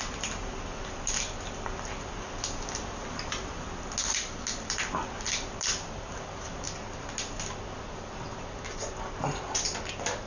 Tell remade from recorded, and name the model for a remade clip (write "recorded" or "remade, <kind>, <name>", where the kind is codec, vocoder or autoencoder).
recorded